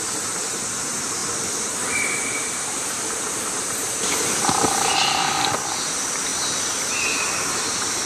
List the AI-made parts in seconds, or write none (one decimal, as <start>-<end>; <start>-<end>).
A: 1.2-5.5